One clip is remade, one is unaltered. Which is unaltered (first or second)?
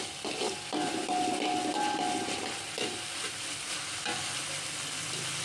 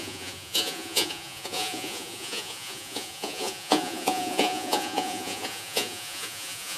first